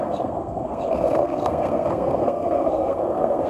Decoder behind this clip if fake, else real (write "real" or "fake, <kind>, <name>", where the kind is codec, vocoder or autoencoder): fake, codec, SNAC